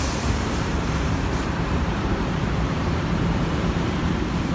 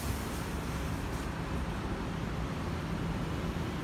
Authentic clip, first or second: second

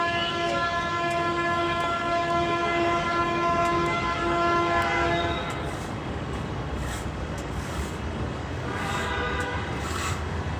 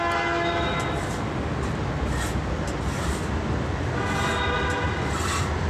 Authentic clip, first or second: second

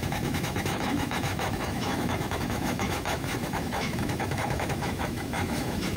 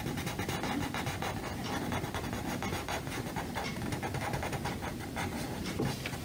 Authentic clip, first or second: second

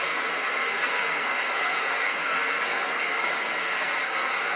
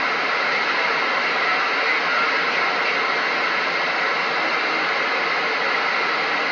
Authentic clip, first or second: second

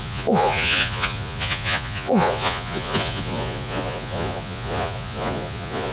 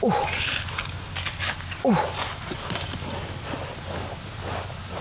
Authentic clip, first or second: second